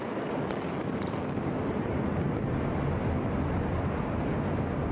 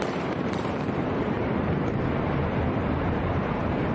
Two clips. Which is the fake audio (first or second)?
second